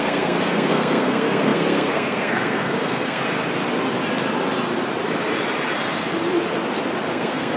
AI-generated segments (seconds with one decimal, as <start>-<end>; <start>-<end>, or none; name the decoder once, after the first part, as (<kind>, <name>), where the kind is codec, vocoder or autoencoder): 0.0-3.2 (codec, SNAC); 7.1-7.6